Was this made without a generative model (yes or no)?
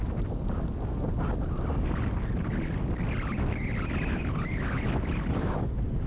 yes